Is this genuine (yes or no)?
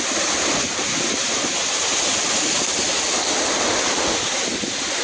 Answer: yes